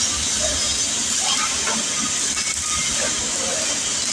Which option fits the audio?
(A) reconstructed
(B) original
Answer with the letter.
B